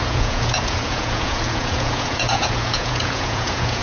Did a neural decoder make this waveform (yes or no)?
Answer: yes